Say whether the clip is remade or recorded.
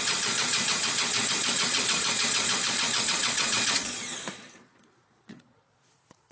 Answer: remade